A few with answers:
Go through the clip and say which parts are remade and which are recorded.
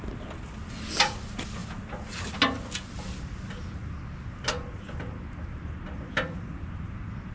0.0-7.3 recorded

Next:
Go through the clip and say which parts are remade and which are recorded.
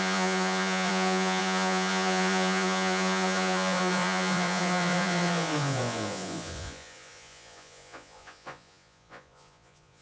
0.0-10.0 remade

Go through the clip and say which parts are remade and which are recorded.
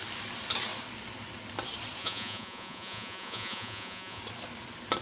0.0-2.0 recorded; 2.0-4.2 remade; 4.2-5.0 recorded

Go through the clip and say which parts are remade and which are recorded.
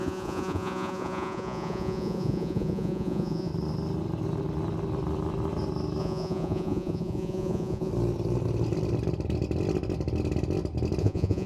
0.0-3.5 remade; 3.5-6.0 recorded; 6.0-7.9 remade; 7.9-11.0 recorded; 11.0-11.5 remade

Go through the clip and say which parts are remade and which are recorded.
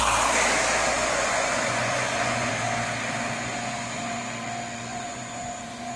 0.0-1.0 recorded; 1.0-2.5 remade; 2.5-3.4 recorded; 3.4-4.3 remade; 4.3-4.9 recorded; 4.9-6.0 remade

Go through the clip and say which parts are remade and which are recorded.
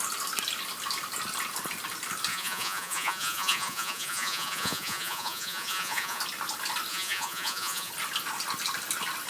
0.0-2.3 recorded; 2.3-6.2 remade; 6.2-6.9 recorded; 6.9-7.9 remade; 7.9-9.3 recorded